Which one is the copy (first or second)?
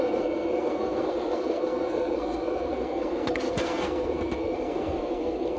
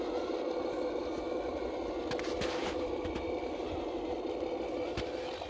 first